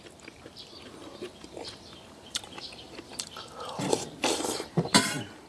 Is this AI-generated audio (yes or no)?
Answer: yes